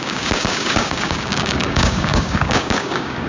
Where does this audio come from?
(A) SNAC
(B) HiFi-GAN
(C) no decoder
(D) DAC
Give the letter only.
D